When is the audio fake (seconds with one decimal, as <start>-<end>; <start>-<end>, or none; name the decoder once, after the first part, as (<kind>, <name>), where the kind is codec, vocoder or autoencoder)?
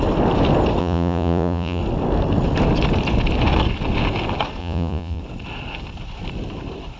0.8-1.8 (vocoder, Vocos); 4.6-5.2